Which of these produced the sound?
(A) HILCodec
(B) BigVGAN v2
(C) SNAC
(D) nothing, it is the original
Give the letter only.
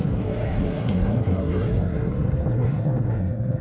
C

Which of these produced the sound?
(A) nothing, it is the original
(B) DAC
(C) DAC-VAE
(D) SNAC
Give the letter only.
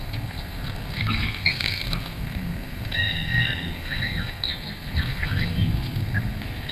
D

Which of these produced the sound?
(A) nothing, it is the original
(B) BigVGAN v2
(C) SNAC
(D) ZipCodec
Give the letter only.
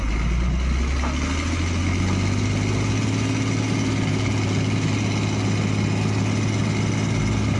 A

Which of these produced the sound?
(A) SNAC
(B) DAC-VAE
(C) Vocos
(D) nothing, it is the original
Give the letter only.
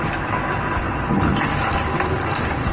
D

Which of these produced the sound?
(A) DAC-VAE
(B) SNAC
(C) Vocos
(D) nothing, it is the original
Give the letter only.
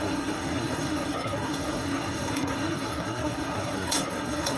B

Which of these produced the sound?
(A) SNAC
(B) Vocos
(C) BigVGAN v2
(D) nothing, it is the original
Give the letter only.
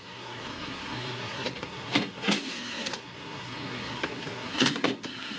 A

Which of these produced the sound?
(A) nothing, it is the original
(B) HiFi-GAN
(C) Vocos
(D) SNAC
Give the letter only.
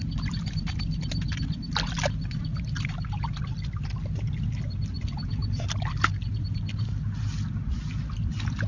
A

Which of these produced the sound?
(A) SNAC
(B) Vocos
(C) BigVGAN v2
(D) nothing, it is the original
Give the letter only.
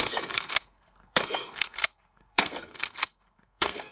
A